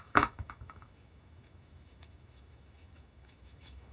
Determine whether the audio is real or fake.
fake